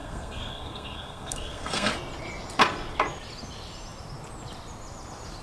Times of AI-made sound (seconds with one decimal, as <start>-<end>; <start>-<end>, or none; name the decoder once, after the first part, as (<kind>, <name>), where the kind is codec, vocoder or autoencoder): 0.0-1.9 (codec, SNAC)